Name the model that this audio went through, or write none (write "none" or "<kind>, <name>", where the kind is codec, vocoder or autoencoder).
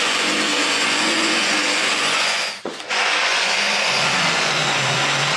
vocoder, Vocos